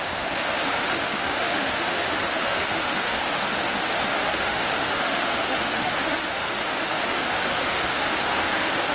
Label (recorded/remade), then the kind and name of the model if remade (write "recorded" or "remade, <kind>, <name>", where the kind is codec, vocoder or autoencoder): remade, autoencoder, DAC-VAE